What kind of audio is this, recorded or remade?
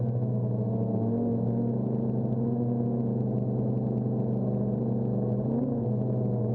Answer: recorded